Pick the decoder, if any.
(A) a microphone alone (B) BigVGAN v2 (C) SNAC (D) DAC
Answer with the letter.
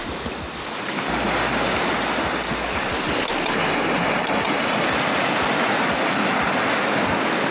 A